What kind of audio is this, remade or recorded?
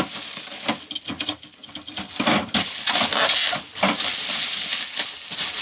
recorded